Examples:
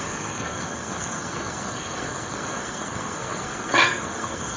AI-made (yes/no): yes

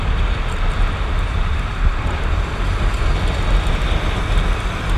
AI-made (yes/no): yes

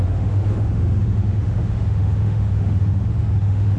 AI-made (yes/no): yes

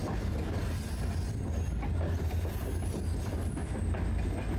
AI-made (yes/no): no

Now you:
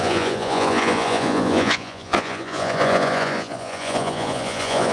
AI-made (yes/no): yes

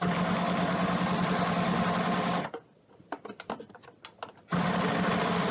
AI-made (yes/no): no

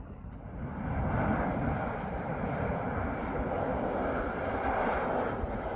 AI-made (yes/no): no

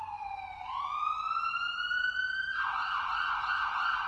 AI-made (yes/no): no